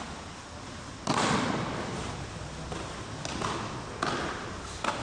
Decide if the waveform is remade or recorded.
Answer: recorded